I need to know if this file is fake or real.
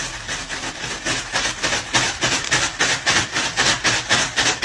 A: real